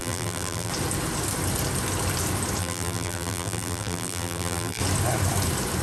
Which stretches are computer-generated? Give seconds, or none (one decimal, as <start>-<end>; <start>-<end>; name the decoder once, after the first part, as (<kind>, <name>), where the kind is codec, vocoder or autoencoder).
0.0-0.7 (vocoder, BigVGAN v2); 2.6-4.8